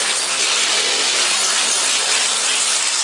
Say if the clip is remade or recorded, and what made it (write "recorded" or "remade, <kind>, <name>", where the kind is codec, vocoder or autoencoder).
recorded